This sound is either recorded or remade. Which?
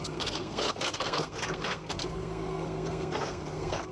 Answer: remade